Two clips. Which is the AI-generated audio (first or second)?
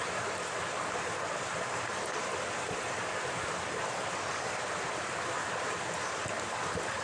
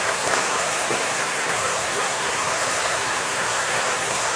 second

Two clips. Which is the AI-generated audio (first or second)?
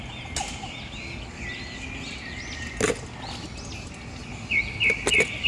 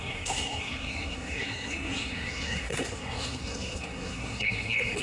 second